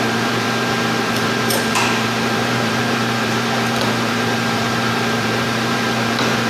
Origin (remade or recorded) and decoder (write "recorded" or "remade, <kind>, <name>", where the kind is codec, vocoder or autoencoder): remade, vocoder, BigVGAN v2